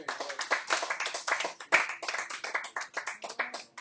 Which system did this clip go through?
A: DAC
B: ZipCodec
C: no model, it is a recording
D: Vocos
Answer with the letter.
C